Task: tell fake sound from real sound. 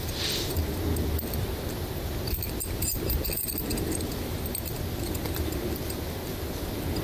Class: real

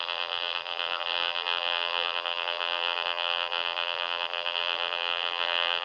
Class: fake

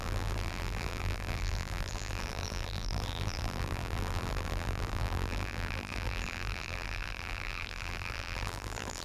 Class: fake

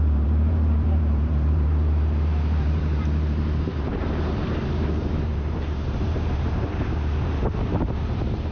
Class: fake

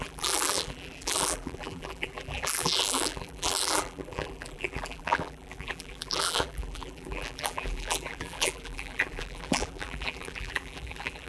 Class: fake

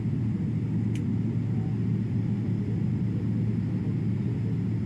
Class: fake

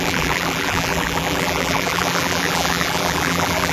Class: fake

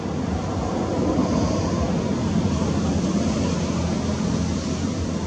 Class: real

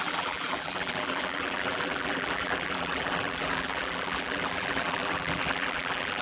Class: fake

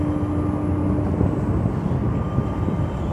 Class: real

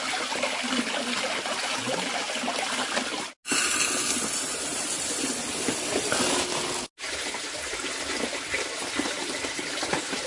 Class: real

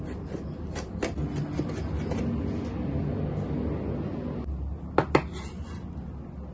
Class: real